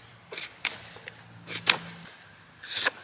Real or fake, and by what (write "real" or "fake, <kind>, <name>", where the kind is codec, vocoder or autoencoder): real